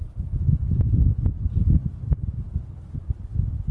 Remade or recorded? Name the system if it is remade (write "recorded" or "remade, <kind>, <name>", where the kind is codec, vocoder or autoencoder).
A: recorded